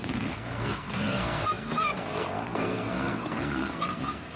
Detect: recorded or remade remade